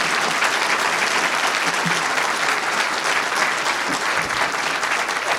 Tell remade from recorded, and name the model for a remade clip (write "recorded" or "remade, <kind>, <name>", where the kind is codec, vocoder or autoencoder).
recorded